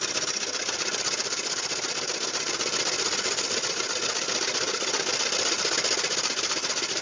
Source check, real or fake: real